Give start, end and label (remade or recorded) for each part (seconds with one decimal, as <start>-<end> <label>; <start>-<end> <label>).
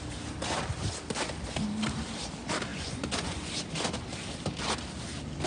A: 0.0-2.7 recorded; 2.7-3.5 remade; 3.5-5.5 recorded